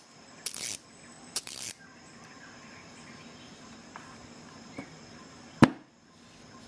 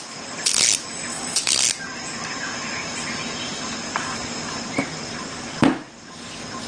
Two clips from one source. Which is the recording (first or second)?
second